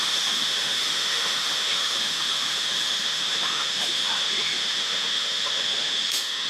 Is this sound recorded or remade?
remade